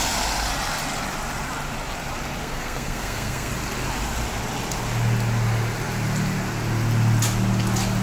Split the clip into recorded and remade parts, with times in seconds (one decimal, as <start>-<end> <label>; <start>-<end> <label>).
0.0-2.4 recorded; 2.4-3.5 remade; 3.5-8.0 recorded